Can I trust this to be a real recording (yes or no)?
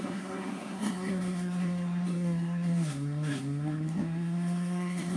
no